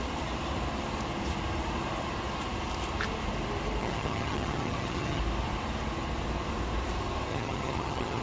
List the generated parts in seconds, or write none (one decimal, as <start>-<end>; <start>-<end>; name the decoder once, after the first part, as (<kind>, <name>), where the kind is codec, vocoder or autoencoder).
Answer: 3.8-5.2 (vocoder, HiFi-GAN); 7.3-8.2